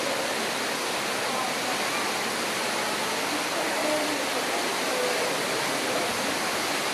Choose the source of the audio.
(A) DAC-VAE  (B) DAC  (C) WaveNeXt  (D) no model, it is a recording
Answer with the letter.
D